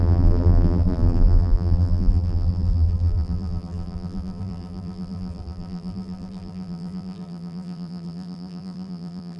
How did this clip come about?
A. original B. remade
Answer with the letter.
B